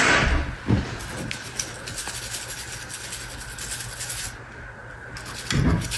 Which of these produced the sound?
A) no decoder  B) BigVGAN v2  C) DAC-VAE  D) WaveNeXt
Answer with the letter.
A